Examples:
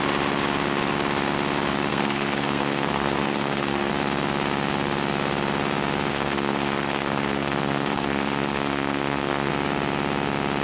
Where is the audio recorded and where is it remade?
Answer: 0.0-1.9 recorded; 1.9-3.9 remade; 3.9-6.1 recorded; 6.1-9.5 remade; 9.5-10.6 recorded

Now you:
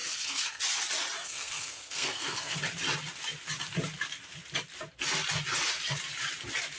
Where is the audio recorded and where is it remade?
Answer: 0.0-0.6 remade; 0.6-1.2 recorded; 1.2-2.6 remade; 2.6-6.8 recorded

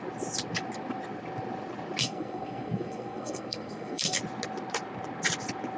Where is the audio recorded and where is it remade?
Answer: 0.0-2.0 recorded; 2.0-4.2 remade; 4.2-5.8 recorded

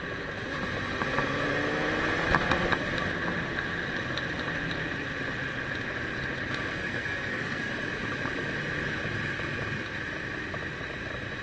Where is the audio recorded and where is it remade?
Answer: 0.0-6.7 recorded; 6.7-7.7 remade; 7.7-11.4 recorded

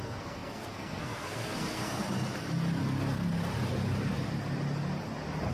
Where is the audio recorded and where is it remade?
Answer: 0.0-2.0 remade; 2.0-5.5 recorded

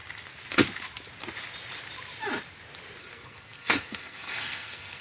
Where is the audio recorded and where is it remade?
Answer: 0.0-3.0 recorded; 3.0-5.0 remade

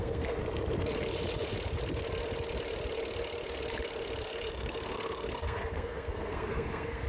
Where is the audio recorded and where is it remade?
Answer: 0.0-0.4 remade; 0.4-4.5 recorded; 4.5-7.1 remade